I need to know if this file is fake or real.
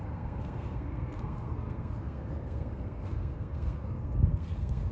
fake